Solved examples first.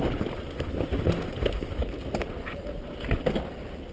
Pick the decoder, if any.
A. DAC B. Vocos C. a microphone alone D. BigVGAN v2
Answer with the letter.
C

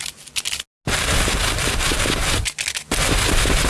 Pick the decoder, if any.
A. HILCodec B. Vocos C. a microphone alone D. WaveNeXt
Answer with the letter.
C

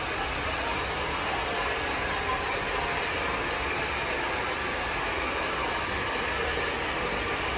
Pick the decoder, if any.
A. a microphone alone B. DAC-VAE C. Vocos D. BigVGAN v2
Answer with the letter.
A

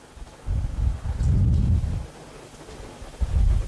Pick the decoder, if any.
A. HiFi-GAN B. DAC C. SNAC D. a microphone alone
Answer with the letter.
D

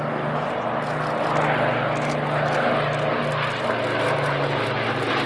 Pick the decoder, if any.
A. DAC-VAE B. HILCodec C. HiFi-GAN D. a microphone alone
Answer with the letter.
D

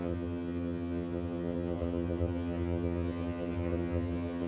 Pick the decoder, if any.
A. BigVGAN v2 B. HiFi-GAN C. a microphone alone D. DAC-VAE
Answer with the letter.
B